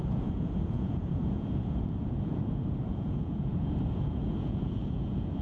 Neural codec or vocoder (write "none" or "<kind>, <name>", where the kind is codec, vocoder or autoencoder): vocoder, Vocos